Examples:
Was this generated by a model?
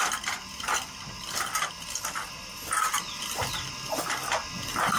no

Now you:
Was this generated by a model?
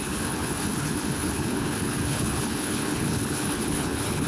yes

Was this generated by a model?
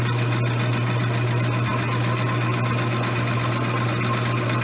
no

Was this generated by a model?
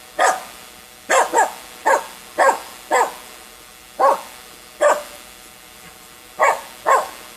no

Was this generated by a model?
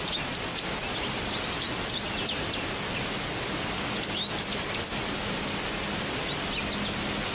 no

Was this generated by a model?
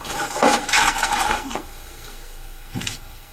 yes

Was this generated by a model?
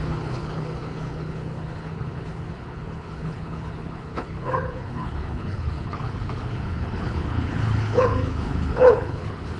yes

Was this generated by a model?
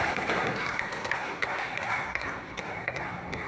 yes